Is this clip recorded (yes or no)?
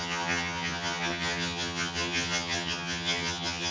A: no